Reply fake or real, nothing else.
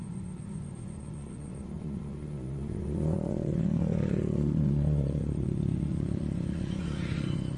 fake